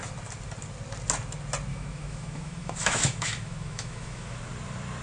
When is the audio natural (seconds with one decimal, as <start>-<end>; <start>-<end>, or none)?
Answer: 0.0-1.7; 4.4-5.0